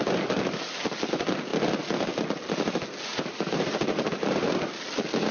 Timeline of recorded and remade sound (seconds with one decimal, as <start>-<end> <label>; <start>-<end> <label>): 0.0-5.3 recorded